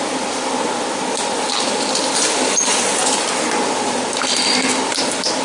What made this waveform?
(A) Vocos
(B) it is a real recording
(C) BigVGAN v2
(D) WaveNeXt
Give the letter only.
C